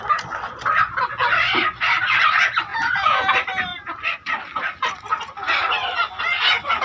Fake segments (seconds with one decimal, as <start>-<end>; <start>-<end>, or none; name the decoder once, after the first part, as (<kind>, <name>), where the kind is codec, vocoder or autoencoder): 2.7-3.3 (vocoder, Vocos)